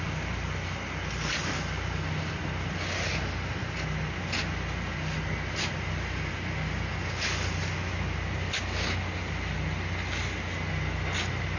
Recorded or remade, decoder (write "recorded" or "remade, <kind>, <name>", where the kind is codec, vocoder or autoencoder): recorded